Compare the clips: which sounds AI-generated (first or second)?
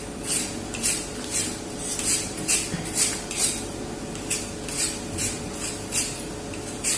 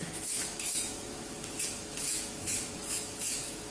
second